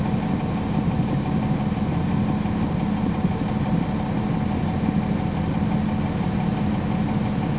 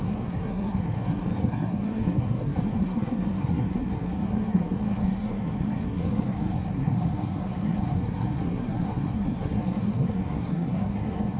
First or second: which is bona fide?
first